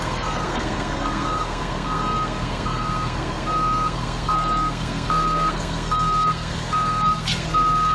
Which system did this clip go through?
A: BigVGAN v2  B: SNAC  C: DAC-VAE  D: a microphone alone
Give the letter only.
B